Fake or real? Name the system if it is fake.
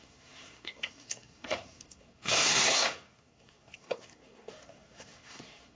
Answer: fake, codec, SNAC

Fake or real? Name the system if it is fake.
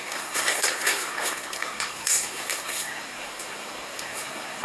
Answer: fake, codec, SNAC